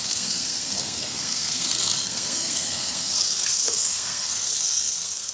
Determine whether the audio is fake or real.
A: fake